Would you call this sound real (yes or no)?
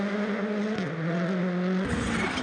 yes